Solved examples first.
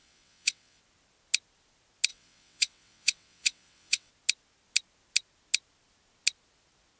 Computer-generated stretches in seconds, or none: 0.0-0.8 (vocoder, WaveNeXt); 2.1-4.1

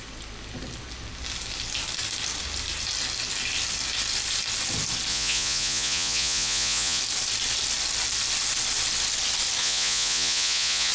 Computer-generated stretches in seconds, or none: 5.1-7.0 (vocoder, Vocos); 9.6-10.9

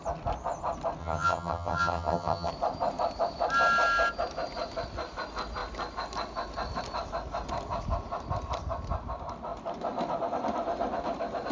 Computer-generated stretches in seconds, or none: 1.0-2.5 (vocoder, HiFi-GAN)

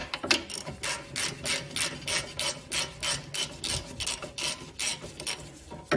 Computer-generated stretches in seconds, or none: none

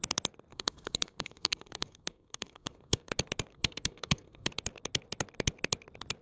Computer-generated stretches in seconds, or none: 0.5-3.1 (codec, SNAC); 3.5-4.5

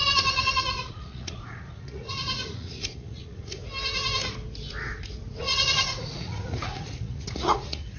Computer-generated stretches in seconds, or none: 0.0-3.6 (vocoder, Vocos); 5.4-8.0